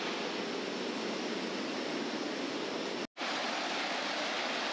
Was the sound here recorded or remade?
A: recorded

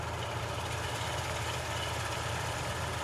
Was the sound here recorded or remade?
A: recorded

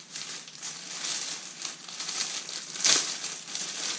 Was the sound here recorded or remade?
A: recorded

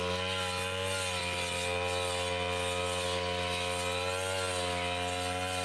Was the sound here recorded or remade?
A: recorded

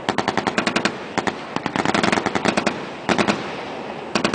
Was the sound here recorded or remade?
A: recorded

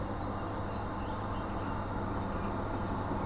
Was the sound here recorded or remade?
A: recorded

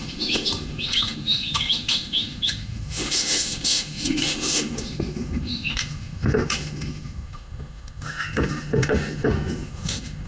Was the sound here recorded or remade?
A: remade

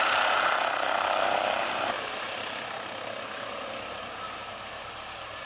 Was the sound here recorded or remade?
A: recorded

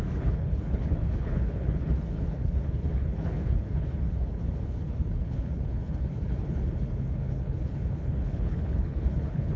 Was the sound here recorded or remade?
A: remade